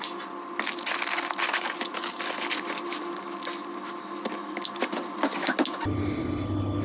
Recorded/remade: recorded